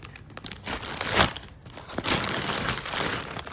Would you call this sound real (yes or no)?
yes